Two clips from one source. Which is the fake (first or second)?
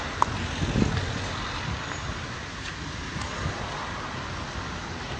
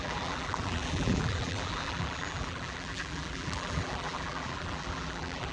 second